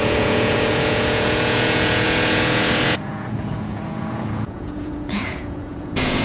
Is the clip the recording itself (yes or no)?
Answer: no